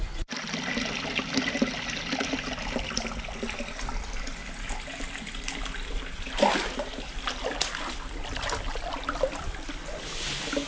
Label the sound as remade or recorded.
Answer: recorded